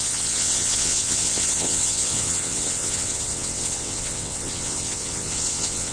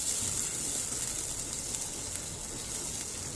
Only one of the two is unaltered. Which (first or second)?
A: second